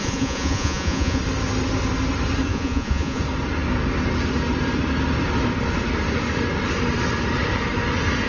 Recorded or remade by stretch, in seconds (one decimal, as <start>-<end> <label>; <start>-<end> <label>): 0.0-1.2 remade; 1.2-2.5 recorded; 2.5-3.2 remade; 3.2-8.3 recorded